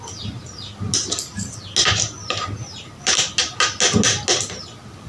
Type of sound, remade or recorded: recorded